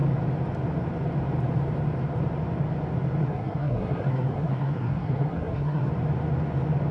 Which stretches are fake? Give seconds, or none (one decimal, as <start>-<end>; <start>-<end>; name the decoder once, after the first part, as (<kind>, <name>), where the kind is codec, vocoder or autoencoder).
3.2-5.9 (codec, SNAC)

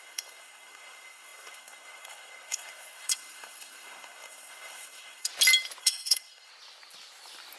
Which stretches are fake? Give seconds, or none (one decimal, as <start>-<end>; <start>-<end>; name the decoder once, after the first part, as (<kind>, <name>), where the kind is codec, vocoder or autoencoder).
0.0-5.3 (codec, SNAC); 5.8-6.5

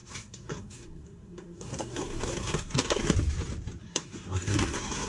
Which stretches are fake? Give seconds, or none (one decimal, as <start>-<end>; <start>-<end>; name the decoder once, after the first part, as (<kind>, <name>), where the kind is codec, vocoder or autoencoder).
0.0-3.1 (codec, SNAC); 3.8-5.1

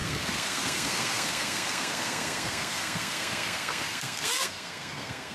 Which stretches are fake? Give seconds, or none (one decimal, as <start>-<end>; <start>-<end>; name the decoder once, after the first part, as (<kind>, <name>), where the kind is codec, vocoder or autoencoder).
0.0-5.3 (codec, SNAC)

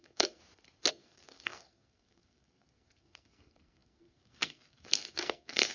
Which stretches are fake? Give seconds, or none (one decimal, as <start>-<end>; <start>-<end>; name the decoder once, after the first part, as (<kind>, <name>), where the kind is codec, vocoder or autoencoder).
0.0-0.4 (codec, SNAC); 0.9-5.7

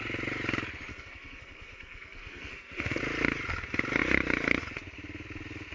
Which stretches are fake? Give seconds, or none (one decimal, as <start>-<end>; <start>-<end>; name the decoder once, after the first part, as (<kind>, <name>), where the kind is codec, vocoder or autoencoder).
0.9-3.0 (codec, SNAC)

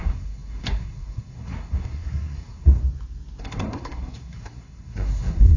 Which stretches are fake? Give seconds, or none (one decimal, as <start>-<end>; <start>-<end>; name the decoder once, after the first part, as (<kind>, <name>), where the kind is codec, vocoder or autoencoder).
0.0-2.8 (codec, SNAC); 3.4-5.6

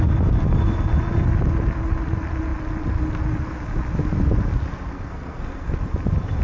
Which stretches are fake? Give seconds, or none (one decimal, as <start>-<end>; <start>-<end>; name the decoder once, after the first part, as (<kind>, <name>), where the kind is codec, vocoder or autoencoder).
4.9-5.7 (codec, SNAC)